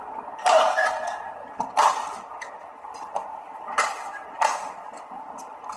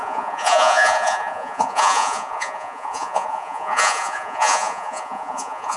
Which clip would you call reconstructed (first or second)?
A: second